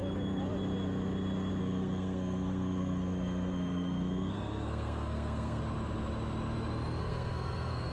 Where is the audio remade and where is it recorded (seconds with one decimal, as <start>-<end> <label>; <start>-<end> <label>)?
0.0-1.6 recorded; 1.6-5.6 remade; 5.6-7.0 recorded; 7.0-7.9 remade